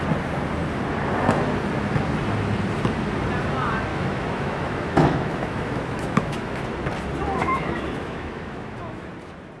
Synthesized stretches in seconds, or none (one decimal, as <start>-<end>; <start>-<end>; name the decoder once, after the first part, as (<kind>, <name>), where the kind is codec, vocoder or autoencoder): 3.9-6.6 (autoencoder, DAC-VAE); 7.4-9.1

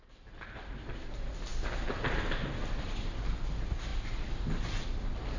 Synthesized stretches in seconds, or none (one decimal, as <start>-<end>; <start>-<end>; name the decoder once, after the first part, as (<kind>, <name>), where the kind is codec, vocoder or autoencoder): none